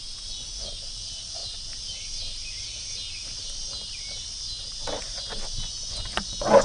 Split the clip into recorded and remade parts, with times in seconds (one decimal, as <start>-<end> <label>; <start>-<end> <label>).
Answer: 0.0-1.4 remade; 1.4-5.0 recorded; 5.0-6.6 remade